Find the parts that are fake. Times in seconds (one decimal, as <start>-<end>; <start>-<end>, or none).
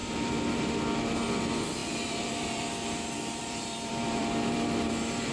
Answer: 0.0-0.8; 1.8-5.3